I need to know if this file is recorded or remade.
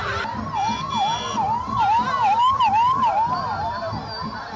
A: recorded